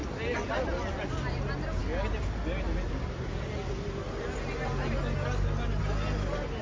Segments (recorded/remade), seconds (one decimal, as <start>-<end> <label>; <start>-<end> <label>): 0.0-6.6 recorded